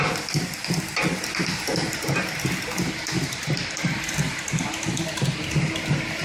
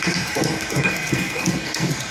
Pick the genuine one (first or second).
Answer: first